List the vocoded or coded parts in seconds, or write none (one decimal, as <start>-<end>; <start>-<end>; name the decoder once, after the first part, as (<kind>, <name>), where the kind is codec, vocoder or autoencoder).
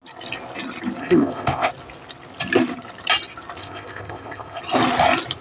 1.0-1.7 (codec, ZipCodec); 3.6-4.6